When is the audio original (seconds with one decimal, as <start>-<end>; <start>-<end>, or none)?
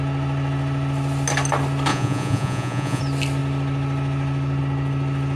0.0-1.9; 3.0-5.4